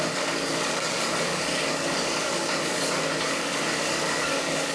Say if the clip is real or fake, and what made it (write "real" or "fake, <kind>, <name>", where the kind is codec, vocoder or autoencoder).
fake, codec, DAC